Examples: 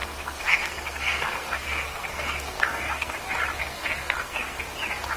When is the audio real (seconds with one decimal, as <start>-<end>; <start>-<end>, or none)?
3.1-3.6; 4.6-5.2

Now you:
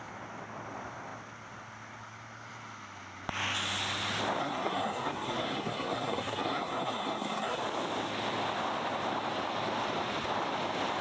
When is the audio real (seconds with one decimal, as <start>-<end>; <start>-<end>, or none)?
0.0-4.4; 7.6-11.0

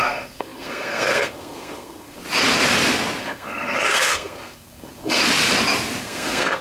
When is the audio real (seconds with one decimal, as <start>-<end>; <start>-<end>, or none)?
2.2-3.2; 5.2-6.0

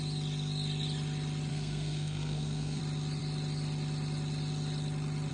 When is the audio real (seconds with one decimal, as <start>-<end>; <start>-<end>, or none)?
0.0-1.5; 2.8-5.3

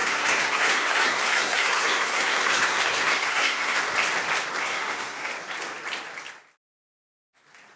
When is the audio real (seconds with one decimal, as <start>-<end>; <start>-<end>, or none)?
3.8-4.6; 5.3-7.8

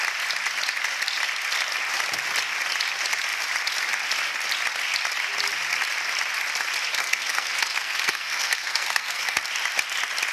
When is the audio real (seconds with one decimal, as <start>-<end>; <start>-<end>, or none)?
0.0-6.9; 9.4-10.3